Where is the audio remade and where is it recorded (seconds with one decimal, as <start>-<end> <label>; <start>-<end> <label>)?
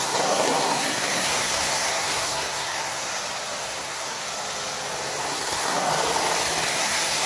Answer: 0.0-3.1 remade; 3.1-3.6 recorded; 3.6-4.2 remade; 4.2-5.3 recorded; 5.3-5.9 remade; 5.9-6.7 recorded; 6.7-7.3 remade